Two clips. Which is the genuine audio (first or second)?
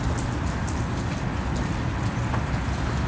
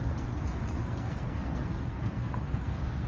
first